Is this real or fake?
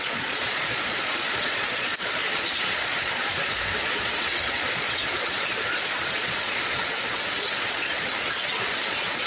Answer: fake